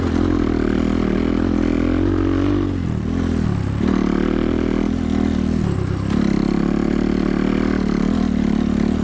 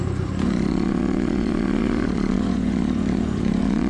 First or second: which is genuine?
first